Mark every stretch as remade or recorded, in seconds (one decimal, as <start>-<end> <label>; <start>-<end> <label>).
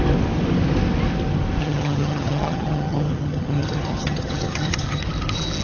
0.0-1.6 recorded; 1.6-5.0 remade; 5.0-5.6 recorded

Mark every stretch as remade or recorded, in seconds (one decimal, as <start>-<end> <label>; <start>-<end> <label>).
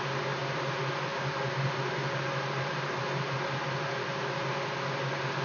0.0-5.4 recorded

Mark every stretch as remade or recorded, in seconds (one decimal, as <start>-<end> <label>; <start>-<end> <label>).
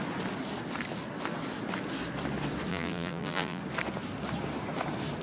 0.0-2.7 recorded; 2.7-3.6 remade; 3.6-5.2 recorded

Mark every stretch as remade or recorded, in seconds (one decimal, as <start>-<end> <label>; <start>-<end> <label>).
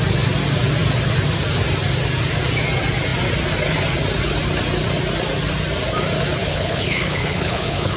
0.0-6.4 recorded; 6.4-8.0 remade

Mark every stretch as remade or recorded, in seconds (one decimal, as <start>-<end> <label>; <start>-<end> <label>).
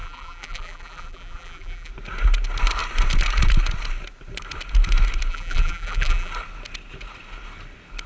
0.0-1.9 remade; 1.9-5.3 recorded; 5.3-6.3 remade; 6.3-8.1 recorded